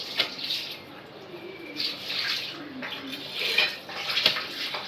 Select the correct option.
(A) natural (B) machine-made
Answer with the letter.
B